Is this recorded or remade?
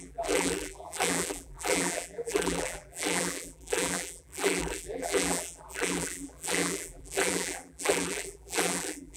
remade